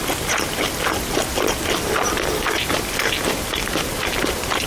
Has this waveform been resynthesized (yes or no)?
no